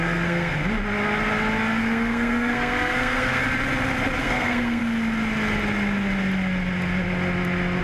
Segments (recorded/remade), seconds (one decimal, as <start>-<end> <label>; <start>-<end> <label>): 0.0-0.6 remade; 0.6-1.8 recorded; 1.8-3.4 remade; 3.4-4.2 recorded; 4.2-4.8 remade; 4.8-7.8 recorded